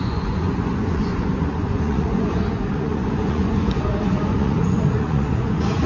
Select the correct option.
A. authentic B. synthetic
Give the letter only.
B